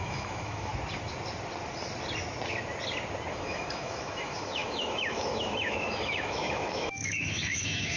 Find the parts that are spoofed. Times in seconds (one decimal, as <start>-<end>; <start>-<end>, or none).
0.0-0.7; 3.3-8.0